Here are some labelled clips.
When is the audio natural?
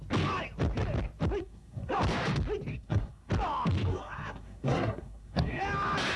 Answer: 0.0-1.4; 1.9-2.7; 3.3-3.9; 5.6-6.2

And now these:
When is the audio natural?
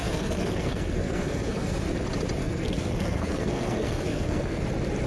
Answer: 1.8-2.4; 4.6-5.1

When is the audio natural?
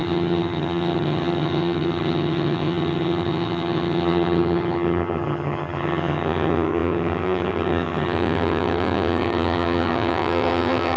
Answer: none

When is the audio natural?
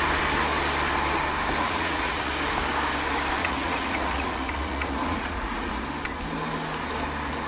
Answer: 0.0-1.6; 2.3-3.4; 5.7-7.5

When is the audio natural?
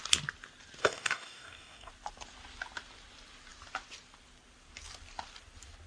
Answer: 0.0-0.8; 1.9-5.9